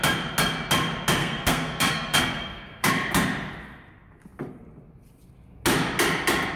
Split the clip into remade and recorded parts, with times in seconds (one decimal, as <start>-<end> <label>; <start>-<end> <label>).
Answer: 0.0-1.2 recorded; 1.2-2.9 remade; 2.9-6.6 recorded